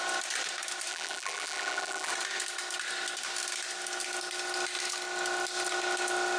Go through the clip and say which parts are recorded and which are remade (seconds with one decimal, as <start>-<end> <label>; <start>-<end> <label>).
0.0-0.9 recorded; 0.9-2.1 remade; 2.1-6.4 recorded